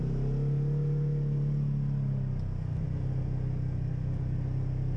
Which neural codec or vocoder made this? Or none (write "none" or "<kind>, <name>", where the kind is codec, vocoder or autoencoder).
none